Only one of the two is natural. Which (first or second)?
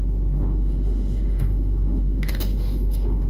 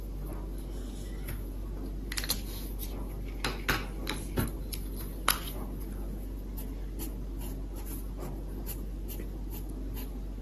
second